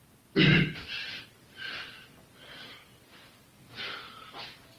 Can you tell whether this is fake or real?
real